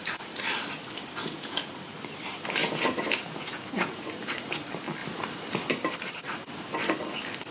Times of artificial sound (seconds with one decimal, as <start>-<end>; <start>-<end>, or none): 1.2-1.7; 2.6-4.1